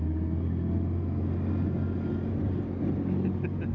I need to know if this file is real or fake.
real